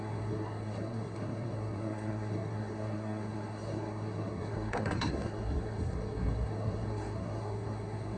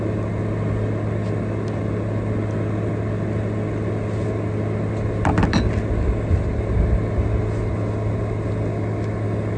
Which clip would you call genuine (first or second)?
second